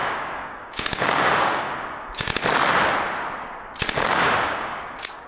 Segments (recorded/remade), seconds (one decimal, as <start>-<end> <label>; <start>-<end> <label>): 0.0-2.3 remade; 2.3-4.0 recorded; 4.0-5.3 remade